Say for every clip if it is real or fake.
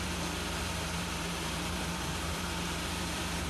fake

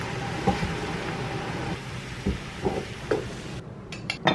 real